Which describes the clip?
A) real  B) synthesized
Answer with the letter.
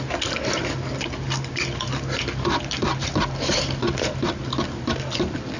B